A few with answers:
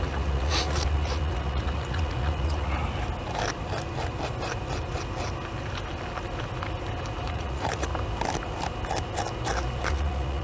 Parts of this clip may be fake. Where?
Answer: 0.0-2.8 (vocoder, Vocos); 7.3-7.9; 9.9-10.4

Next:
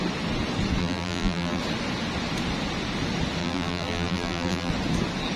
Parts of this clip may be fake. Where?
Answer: 0.8-1.6 (vocoder, BigVGAN v2); 3.4-4.7